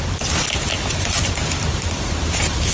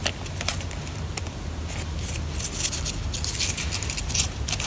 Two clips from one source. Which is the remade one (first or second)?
first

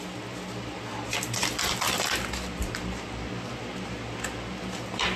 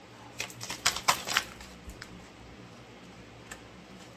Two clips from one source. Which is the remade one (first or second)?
second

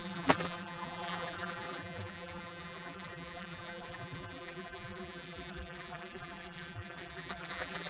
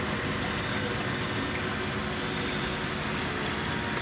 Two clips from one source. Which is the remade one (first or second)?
first